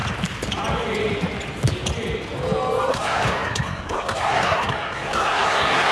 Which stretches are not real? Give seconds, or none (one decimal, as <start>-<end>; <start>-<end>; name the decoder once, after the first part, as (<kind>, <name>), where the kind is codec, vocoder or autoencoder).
2.9-5.9 (codec, SNAC)